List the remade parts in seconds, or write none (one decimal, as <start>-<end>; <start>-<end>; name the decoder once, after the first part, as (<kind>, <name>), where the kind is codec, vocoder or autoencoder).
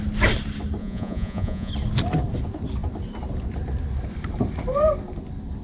0.8-1.7 (vocoder, Vocos)